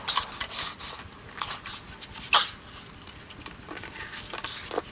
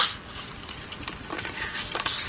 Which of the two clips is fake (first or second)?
second